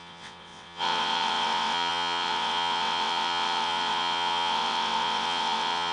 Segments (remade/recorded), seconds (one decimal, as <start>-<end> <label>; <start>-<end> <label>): 0.0-5.9 remade